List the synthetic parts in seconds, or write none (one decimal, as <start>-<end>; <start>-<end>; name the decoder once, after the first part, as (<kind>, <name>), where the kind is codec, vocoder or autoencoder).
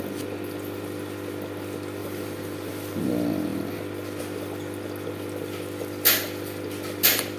2.0-3.0 (vocoder, BigVGAN v2)